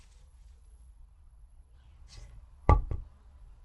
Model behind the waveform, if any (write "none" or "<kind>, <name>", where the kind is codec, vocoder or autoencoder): vocoder, Vocos